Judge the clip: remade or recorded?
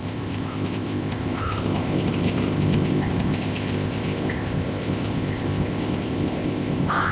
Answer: remade